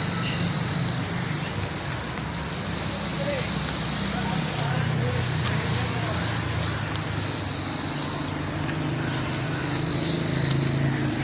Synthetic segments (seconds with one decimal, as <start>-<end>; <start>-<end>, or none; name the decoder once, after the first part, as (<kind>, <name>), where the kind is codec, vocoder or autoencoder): none